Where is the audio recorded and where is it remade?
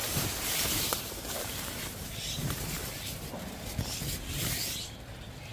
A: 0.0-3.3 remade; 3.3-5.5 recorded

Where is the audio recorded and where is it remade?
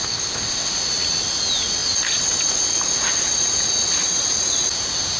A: 0.0-0.7 remade; 0.7-5.2 recorded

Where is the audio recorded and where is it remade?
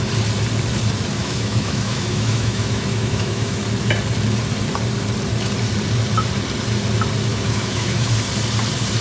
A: 0.0-1.2 recorded; 1.2-3.6 remade; 3.6-7.3 recorded; 7.3-8.1 remade; 8.1-9.0 recorded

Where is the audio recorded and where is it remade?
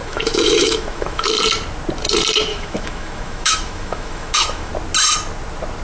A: 0.0-1.3 remade; 1.3-2.5 recorded; 2.5-4.7 remade; 4.7-5.8 recorded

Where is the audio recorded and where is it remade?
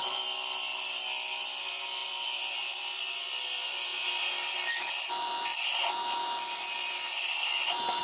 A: 0.0-8.0 recorded